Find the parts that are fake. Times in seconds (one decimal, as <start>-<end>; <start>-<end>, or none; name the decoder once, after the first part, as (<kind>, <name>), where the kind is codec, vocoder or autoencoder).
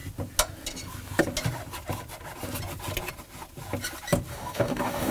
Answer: 4.3-5.1 (codec, DAC)